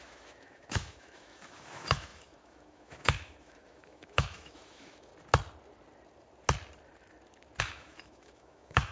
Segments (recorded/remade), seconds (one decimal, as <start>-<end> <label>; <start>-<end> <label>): 0.0-5.1 remade; 5.1-7.6 recorded; 7.6-8.9 remade